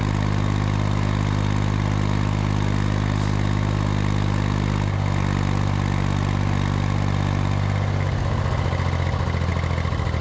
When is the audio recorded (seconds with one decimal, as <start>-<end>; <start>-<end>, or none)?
0.0-10.2